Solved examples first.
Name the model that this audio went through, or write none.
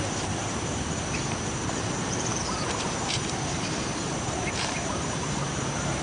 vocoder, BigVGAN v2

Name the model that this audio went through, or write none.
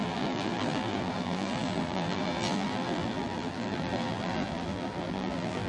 vocoder, BigVGAN v2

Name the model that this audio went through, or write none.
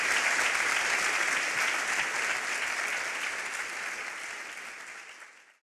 none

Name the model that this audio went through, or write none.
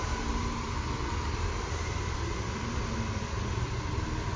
vocoder, BigVGAN v2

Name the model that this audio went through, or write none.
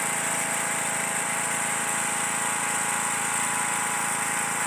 vocoder, BigVGAN v2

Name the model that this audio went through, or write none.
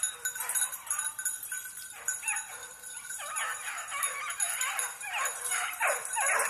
vocoder, BigVGAN v2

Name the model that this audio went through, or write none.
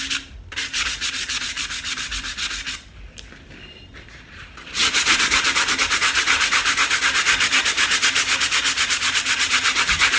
vocoder, BigVGAN v2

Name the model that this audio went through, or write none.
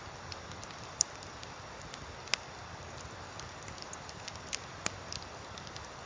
none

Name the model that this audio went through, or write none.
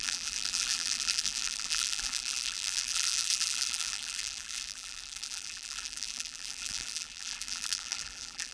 vocoder, BigVGAN v2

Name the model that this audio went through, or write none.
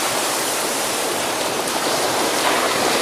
vocoder, BigVGAN v2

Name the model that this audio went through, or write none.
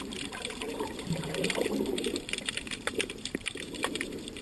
vocoder, BigVGAN v2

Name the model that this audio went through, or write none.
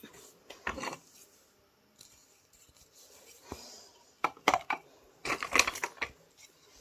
none